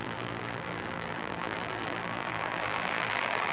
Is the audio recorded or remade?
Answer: remade